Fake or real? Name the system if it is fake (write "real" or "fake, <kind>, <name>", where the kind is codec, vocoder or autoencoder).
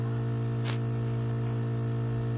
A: real